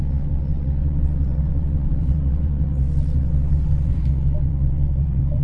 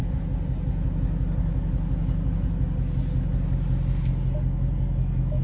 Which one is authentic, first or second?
second